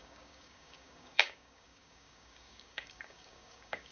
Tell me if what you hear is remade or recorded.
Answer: remade